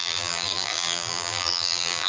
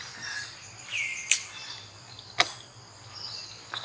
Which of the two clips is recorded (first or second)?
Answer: second